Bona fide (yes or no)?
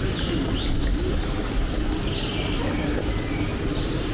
yes